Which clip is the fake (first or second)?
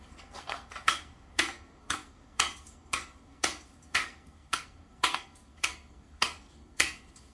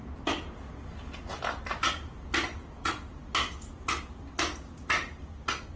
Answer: first